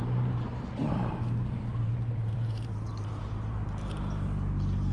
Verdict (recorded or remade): remade